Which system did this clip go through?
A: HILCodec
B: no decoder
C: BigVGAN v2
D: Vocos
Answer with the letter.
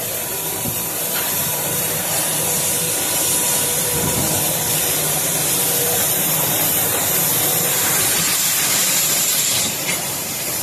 C